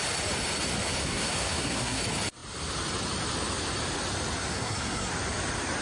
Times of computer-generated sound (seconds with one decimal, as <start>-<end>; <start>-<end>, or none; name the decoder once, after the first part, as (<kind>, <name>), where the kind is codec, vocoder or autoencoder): 1.0-2.0 (codec, SNAC); 4.5-5.1